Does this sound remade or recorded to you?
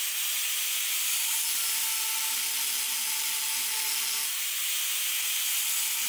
recorded